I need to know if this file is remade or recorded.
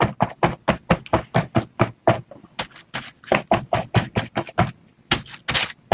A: recorded